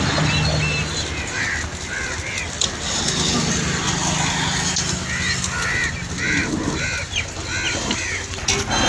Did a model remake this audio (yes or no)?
no